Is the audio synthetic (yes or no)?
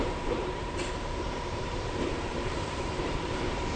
yes